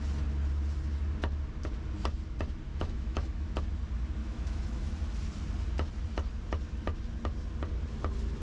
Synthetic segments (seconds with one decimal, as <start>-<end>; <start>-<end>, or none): 2.7-3.6; 4.2-4.9